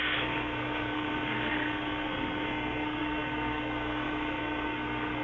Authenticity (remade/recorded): remade